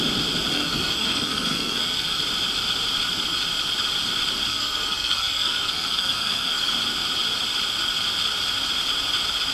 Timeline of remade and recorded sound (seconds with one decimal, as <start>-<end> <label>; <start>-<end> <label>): 0.0-0.5 recorded; 0.5-2.2 remade; 2.2-4.5 recorded; 4.5-6.7 remade; 6.7-9.5 recorded